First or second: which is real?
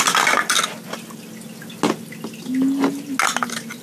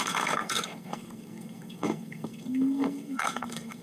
first